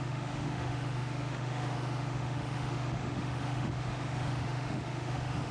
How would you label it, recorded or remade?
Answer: remade